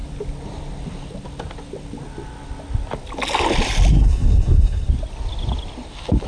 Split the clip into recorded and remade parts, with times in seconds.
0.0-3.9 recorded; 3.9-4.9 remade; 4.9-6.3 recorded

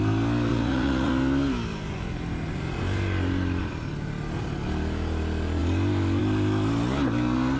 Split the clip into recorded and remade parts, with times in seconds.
0.0-0.5 recorded; 0.5-1.1 remade; 1.1-7.6 recorded

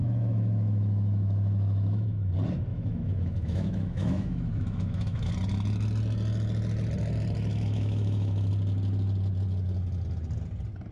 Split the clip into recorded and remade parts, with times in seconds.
0.0-2.3 remade; 2.3-2.7 recorded; 2.7-5.3 remade; 5.3-7.5 recorded; 7.5-8.5 remade; 8.5-10.9 recorded